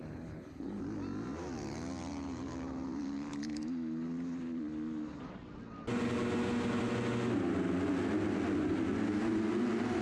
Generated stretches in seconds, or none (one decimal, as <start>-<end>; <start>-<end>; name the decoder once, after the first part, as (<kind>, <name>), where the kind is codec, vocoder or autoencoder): 0.0-0.8 (codec, HILCodec)

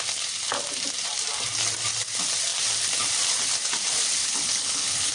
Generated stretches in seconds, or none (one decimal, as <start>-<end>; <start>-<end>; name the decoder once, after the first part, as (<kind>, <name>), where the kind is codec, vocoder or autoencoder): 4.2-5.1 (codec, HILCodec)

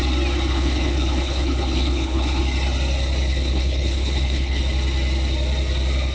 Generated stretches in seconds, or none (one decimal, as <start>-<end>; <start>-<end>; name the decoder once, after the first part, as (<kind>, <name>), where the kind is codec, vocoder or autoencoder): 0.5-2.4 (codec, HILCodec); 3.3-4.6

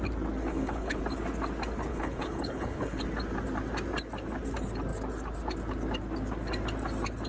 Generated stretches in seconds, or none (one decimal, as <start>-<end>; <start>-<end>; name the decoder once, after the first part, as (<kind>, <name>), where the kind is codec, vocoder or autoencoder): 0.5-1.0 (codec, HILCodec); 1.9-3.0

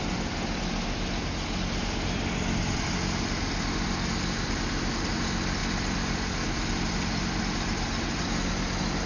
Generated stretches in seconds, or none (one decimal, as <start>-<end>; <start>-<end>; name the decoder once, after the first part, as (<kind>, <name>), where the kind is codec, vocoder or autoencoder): none